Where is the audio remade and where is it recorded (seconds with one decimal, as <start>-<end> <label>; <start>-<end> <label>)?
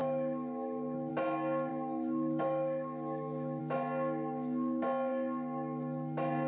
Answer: 0.0-1.1 remade; 1.1-1.7 recorded; 1.7-3.6 remade; 3.6-6.5 recorded